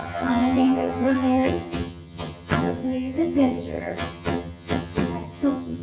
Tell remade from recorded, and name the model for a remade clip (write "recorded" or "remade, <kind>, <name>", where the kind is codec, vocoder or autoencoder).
remade, vocoder, HiFi-GAN